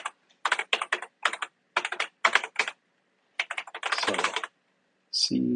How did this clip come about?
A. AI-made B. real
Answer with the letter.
B